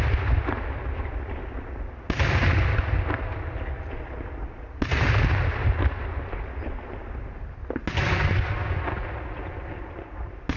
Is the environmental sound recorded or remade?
recorded